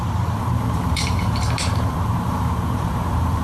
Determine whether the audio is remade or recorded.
remade